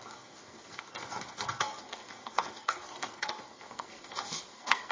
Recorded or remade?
remade